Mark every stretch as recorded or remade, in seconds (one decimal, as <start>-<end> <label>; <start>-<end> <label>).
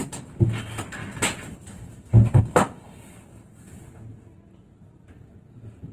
0.0-5.9 recorded